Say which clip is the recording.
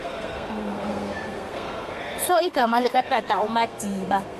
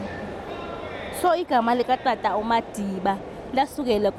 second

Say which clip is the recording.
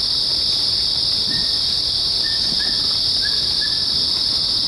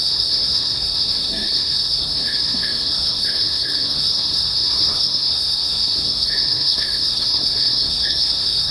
first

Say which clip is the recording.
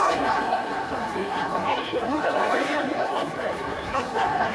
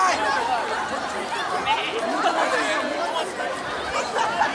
second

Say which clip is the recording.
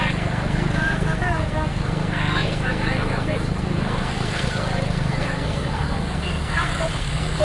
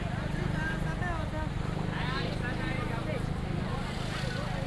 second